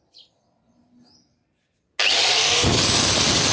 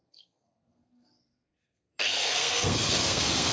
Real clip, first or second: first